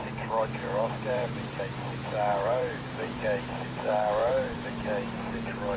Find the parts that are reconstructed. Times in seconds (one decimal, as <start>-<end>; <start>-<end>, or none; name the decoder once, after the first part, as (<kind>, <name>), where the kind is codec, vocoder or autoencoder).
0.6-1.6 (vocoder, BigVGAN v2); 2.3-3.1; 4.2-4.7